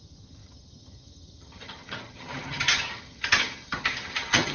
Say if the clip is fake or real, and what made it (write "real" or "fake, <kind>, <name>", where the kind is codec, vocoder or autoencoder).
fake, vocoder, HiFi-GAN